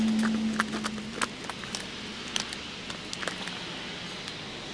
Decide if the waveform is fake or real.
real